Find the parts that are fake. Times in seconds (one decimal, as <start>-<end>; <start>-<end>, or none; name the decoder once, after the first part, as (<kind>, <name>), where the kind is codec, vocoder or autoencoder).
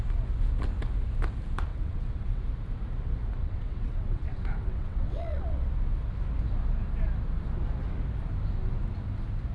1.7-2.4 (vocoder, WaveNeXt); 3.4-5.7